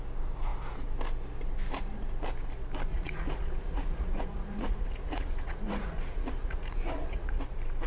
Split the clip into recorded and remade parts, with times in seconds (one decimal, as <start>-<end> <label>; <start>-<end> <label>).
0.0-2.9 recorded; 2.9-7.4 remade; 7.4-7.9 recorded